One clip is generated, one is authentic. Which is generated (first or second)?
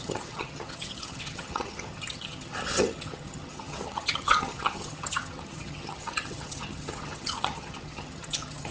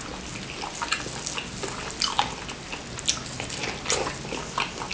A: first